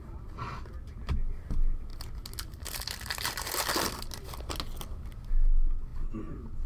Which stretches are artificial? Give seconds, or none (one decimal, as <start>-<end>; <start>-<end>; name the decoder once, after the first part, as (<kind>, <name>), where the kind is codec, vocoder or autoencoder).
none